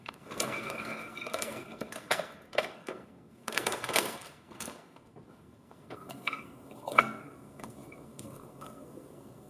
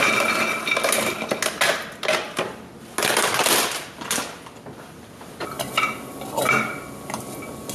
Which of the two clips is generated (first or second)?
first